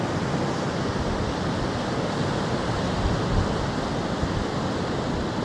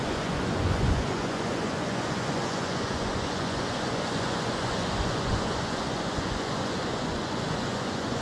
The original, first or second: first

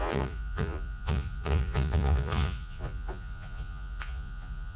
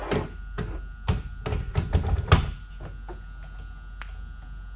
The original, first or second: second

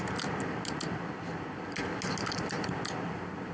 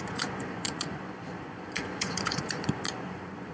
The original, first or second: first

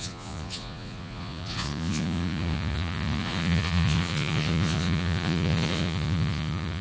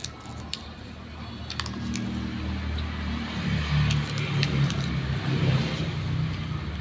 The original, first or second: second